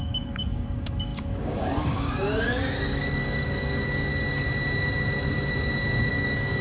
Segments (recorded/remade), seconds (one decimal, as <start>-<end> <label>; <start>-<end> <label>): 0.0-4.1 remade; 4.1-6.1 recorded; 6.1-6.6 remade